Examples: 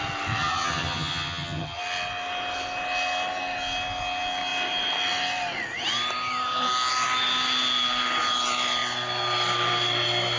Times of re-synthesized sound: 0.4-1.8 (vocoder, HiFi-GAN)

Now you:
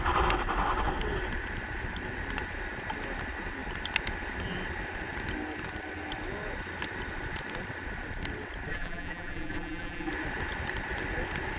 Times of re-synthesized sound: 8.7-10.1 (vocoder, BigVGAN v2)

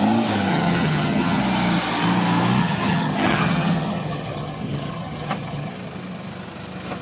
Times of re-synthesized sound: 0.5-1.4 (vocoder, HiFi-GAN); 2.6-5.7

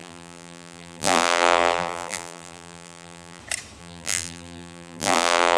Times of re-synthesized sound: 0.0-3.4 (vocoder, BigVGAN v2); 3.8-5.6

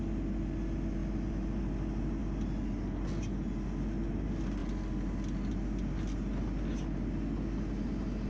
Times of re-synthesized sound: none